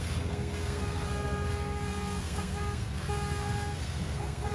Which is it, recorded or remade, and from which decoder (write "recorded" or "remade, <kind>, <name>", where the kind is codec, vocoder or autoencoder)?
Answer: remade, codec, SNAC